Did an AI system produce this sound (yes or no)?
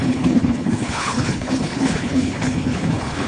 yes